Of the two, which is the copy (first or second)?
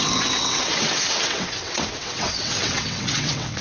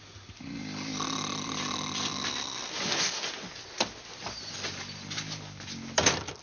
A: first